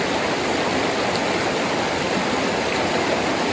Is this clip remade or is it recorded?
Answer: recorded